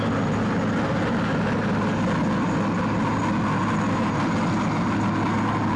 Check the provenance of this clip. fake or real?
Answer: real